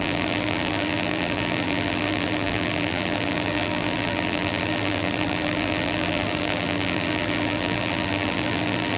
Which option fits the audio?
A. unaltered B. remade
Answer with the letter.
B